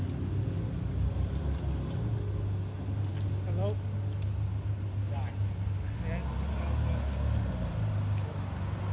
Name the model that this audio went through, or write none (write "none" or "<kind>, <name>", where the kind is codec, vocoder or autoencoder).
none